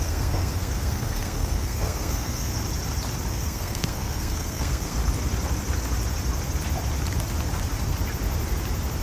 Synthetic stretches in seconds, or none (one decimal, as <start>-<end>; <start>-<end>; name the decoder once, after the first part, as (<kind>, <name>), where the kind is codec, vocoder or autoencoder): 0.0-2.5 (codec, SNAC); 3.3-5.0